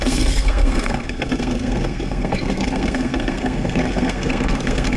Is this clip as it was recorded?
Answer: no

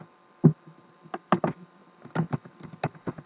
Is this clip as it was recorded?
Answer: yes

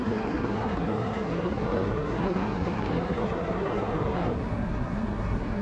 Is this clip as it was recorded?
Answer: no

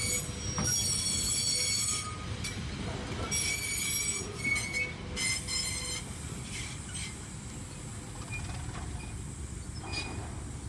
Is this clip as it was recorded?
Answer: yes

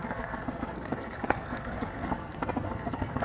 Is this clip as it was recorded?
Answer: no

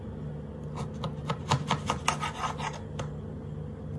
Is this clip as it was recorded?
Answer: yes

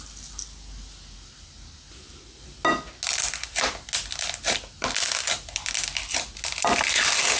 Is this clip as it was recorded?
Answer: yes